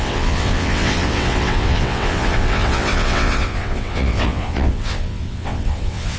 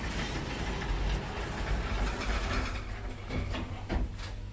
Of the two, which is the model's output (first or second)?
first